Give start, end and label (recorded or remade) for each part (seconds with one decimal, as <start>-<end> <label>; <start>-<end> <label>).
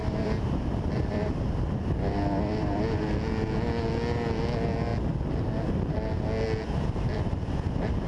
0.0-3.1 remade; 3.1-8.1 recorded